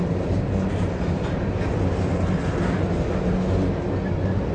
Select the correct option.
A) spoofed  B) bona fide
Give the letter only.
B